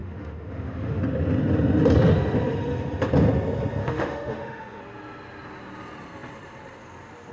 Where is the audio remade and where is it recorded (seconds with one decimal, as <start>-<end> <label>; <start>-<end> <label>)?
0.0-1.0 remade; 1.0-3.8 recorded; 3.8-4.8 remade; 4.8-7.3 recorded